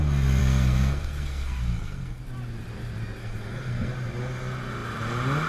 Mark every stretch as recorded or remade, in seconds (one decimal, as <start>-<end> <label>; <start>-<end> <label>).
0.0-0.4 recorded; 0.4-2.2 remade; 2.2-3.2 recorded; 3.2-3.9 remade; 3.9-5.5 recorded